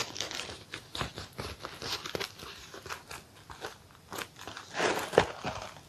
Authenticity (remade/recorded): recorded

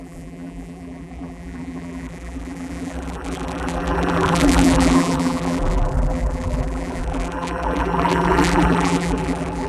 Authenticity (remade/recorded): remade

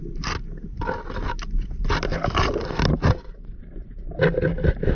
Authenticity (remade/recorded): recorded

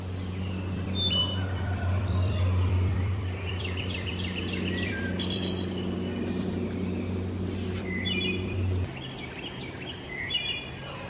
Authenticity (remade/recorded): remade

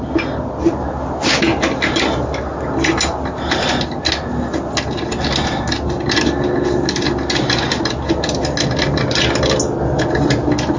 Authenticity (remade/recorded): recorded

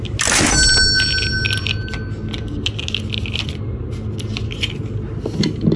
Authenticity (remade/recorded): recorded